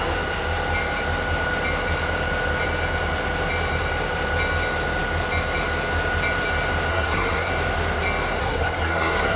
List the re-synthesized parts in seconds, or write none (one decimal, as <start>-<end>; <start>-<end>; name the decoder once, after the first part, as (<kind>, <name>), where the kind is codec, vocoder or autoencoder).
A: 6.9-7.5 (codec, SNAC); 8.4-9.4